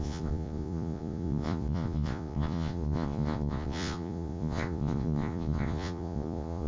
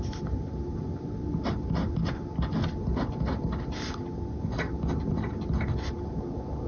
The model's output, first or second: first